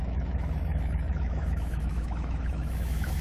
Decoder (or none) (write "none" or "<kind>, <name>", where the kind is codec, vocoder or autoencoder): autoencoder, DAC-VAE